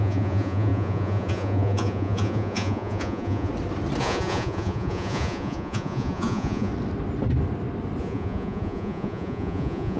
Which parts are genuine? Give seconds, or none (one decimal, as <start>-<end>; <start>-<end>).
3.5-4.0; 6.7-8.0